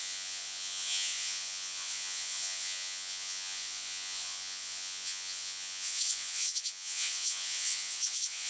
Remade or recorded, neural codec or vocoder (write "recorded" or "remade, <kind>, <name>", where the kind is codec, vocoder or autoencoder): remade, vocoder, Vocos